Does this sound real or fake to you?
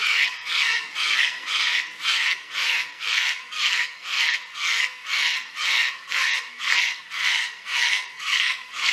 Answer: fake